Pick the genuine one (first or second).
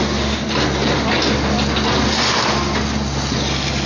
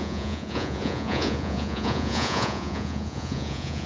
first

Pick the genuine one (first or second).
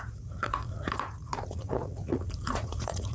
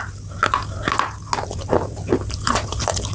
second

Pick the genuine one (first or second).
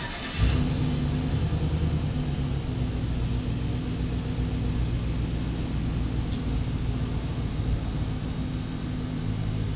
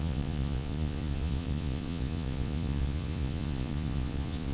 first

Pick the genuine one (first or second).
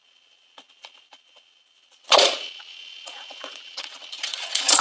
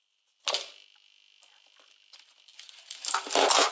second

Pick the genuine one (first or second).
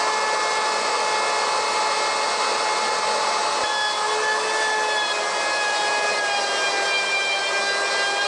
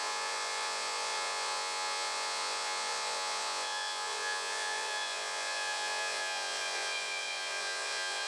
first